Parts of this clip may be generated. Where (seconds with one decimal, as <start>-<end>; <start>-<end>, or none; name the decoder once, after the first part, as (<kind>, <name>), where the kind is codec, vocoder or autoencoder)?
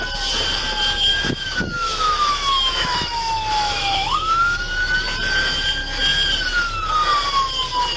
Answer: 1.1-4.6 (autoencoder, DAC-VAE)